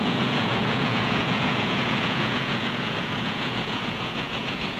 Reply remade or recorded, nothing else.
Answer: remade